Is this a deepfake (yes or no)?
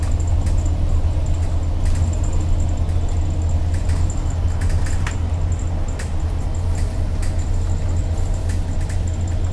no